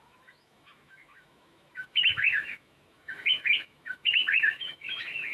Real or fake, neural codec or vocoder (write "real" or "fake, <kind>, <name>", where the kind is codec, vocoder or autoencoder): fake, autoencoder, DAC-VAE